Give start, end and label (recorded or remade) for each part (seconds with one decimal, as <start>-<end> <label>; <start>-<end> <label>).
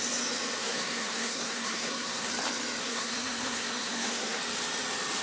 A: 0.0-0.6 recorded; 0.6-2.3 remade; 2.3-2.8 recorded; 2.8-4.4 remade; 4.4-5.2 recorded